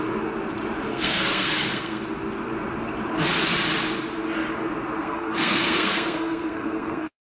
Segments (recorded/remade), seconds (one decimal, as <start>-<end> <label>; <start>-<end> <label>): 0.0-0.9 recorded; 0.9-2.0 remade; 2.0-5.0 recorded; 5.0-7.2 remade